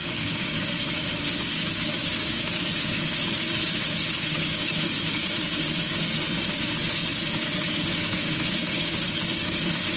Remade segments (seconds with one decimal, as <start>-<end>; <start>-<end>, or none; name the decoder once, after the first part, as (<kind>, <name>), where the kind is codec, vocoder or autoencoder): 0.0-10.0 (codec, DAC)